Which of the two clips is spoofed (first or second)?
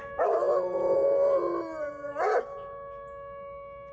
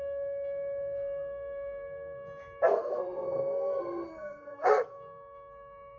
second